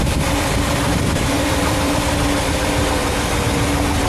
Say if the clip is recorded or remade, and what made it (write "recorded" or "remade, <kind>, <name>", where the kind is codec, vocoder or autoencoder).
remade, vocoder, BigVGAN v2